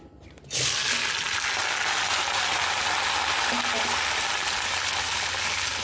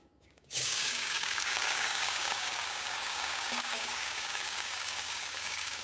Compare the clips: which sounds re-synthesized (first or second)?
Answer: second